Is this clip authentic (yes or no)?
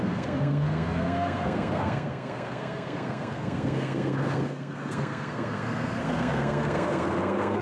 no